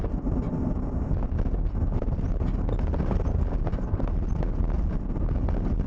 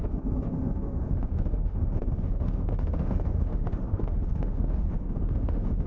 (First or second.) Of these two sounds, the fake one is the second